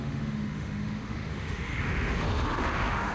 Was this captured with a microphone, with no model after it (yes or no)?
no